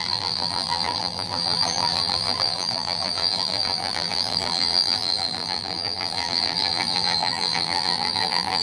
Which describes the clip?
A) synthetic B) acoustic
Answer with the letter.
A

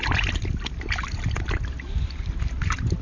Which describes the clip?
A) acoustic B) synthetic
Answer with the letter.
A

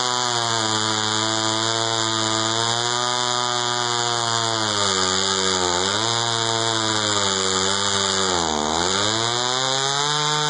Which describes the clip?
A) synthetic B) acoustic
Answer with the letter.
B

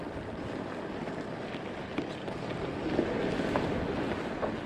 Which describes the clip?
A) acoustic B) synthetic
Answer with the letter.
A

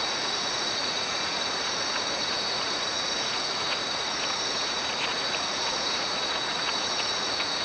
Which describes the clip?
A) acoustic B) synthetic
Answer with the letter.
B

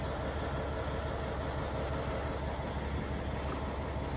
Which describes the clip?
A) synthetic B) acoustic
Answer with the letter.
B